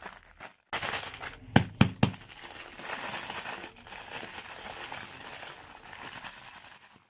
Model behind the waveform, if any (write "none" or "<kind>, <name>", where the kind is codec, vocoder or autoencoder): none